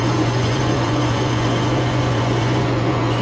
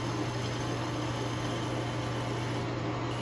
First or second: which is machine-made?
first